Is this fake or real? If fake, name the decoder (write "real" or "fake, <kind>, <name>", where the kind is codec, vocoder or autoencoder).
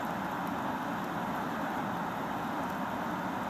real